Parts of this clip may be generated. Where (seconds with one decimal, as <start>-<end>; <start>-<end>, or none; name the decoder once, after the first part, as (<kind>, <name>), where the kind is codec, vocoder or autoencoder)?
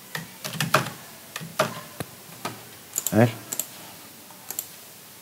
none